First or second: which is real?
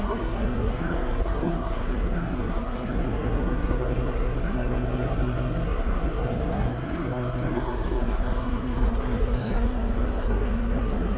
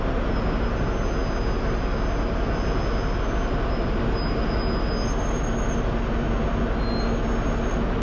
second